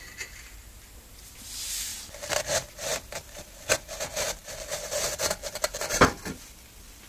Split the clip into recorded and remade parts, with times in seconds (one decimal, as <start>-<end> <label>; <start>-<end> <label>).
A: 0.0-1.9 recorded; 1.9-2.5 remade; 2.5-2.9 recorded; 2.9-3.7 remade; 3.7-4.4 recorded; 4.4-6.6 remade; 6.6-7.1 recorded